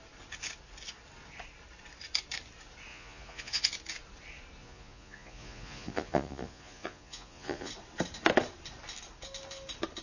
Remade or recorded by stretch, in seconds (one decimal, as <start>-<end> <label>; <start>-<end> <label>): 0.0-2.9 recorded; 2.9-3.7 remade; 3.7-4.6 recorded; 4.6-7.7 remade; 7.7-10.0 recorded